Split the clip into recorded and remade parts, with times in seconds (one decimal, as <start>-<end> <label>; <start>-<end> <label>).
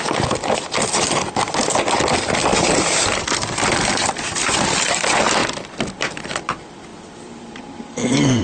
0.0-2.5 recorded; 2.5-4.9 remade; 4.9-5.4 recorded; 5.4-6.0 remade; 6.0-6.9 recorded; 6.9-8.4 remade